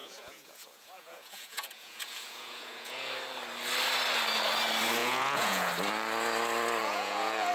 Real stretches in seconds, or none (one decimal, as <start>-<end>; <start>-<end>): 3.1-5.0; 5.7-6.8